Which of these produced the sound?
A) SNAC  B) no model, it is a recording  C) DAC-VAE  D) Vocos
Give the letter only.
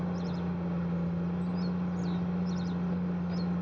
B